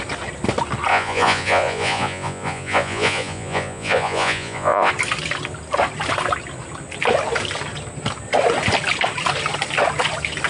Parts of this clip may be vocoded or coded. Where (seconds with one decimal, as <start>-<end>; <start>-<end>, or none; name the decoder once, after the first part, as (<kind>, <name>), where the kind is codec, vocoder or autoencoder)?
0.9-4.9 (vocoder, Vocos)